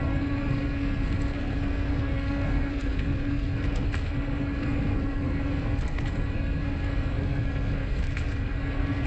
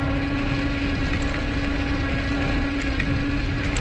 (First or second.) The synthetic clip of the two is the first